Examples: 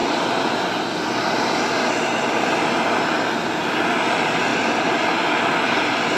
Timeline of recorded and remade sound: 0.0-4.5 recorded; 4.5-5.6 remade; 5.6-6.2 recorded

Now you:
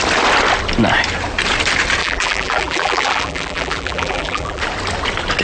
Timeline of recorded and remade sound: 0.0-2.0 recorded; 2.0-4.6 remade; 4.6-5.4 recorded

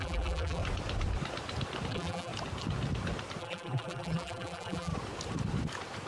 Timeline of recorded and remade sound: 0.0-0.6 remade; 0.6-1.9 recorded; 1.9-2.3 remade; 2.3-3.4 recorded; 3.4-4.9 remade; 4.9-6.1 recorded

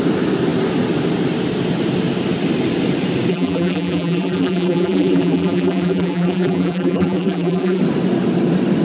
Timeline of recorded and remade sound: 0.0-3.3 recorded; 3.3-7.8 remade; 7.8-8.8 recorded

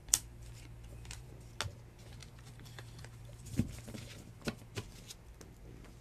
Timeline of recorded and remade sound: 0.0-1.3 remade; 1.3-2.2 recorded; 2.2-4.7 remade; 4.7-6.0 recorded

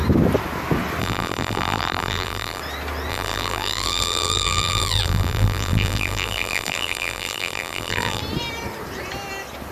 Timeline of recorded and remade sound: 0.0-1.0 recorded; 1.0-2.6 remade; 2.6-3.1 recorded; 3.1-8.2 remade; 8.2-9.7 recorded

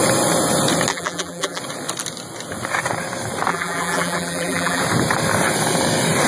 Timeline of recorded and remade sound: 0.0-0.9 recorded; 0.9-1.6 remade; 1.6-3.5 recorded; 3.5-4.8 remade; 4.8-6.3 recorded